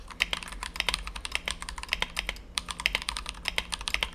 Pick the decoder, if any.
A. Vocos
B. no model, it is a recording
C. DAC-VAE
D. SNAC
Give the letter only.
B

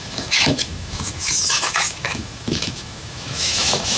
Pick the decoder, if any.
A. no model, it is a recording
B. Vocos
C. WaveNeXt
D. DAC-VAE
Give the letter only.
D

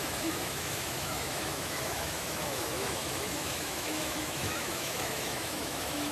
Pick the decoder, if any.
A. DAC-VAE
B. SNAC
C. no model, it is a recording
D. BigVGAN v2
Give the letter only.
A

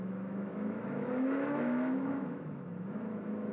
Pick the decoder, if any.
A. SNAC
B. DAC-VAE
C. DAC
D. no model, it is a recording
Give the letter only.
B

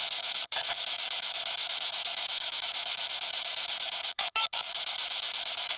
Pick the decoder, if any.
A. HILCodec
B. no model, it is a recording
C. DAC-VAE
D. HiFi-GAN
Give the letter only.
C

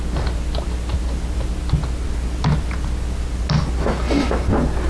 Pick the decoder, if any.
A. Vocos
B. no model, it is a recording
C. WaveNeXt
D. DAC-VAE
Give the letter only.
B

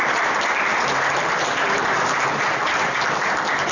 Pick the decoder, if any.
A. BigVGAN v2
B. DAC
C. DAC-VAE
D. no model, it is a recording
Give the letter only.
D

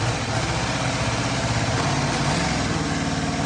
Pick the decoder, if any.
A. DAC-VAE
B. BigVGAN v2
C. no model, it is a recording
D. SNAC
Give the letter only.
C